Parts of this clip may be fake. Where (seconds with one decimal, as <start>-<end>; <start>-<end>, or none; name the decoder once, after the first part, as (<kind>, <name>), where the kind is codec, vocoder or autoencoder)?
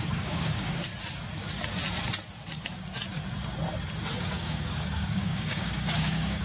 0.0-0.9 (codec, DAC); 4.2-6.4